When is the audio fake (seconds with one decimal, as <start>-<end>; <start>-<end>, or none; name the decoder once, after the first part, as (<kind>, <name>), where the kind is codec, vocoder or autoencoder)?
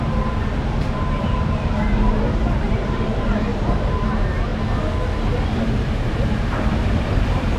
0.0-4.5 (vocoder, BigVGAN v2); 5.6-7.6